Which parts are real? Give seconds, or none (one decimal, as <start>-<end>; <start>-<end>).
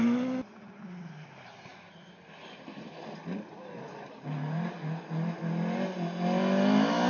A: 0.0-7.1